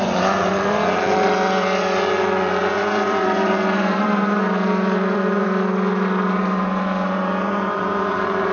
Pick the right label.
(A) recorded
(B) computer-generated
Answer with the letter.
B